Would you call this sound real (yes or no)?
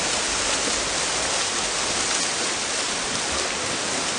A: yes